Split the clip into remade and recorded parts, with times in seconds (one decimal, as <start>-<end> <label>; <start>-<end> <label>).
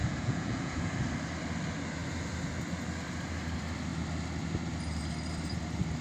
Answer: 0.0-0.9 remade; 0.9-6.0 recorded